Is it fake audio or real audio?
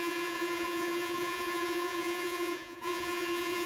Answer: fake